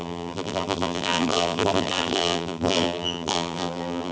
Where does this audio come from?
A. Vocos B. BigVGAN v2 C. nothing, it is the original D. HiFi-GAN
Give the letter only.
B